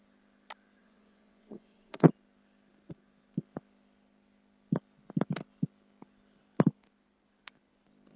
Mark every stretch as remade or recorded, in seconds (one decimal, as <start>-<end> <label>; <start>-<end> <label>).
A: 0.0-0.8 recorded; 0.8-2.1 remade; 2.1-8.2 recorded

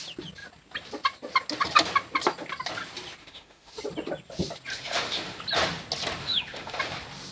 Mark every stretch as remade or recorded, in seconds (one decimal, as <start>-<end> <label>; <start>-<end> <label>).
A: 0.0-3.2 recorded; 3.2-3.8 remade; 3.8-4.7 recorded; 4.7-5.4 remade; 5.4-6.2 recorded; 6.2-6.8 remade; 6.8-7.3 recorded

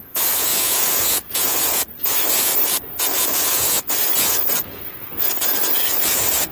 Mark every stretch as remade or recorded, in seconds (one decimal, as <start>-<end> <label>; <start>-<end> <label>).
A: 0.0-2.5 remade; 2.5-3.0 recorded; 3.0-6.5 remade

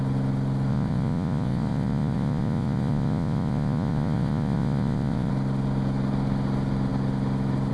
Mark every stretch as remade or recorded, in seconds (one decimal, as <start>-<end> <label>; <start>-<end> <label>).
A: 0.0-0.7 recorded; 0.7-5.3 remade; 5.3-7.7 recorded

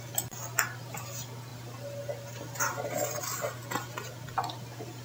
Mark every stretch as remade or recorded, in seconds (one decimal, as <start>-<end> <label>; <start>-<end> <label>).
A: 0.0-5.0 recorded

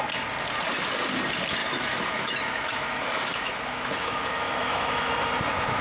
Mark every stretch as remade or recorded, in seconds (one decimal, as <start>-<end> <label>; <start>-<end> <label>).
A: 0.0-1.6 recorded; 1.6-5.1 remade; 5.1-5.8 recorded

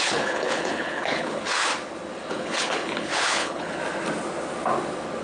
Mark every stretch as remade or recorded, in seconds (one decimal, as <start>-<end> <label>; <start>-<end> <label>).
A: 0.0-1.7 remade; 1.7-2.3 recorded; 2.3-3.8 remade; 3.8-5.2 recorded